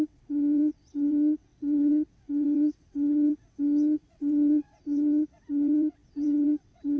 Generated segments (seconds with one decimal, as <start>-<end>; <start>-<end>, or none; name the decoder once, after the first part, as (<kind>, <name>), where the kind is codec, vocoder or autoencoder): 0.0-7.0 (vocoder, WaveNeXt)

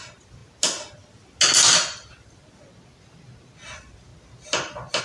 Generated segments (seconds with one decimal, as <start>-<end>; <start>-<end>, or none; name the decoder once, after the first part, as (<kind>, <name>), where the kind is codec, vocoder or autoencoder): none